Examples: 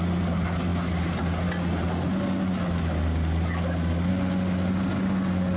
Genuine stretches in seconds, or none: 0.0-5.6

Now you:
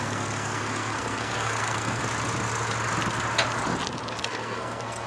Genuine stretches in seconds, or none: 2.0-4.2

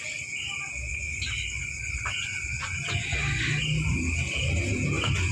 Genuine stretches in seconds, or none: 0.0-0.9; 3.0-5.3